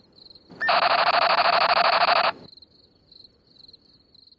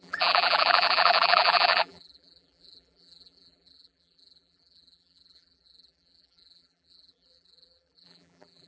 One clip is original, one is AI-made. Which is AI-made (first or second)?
second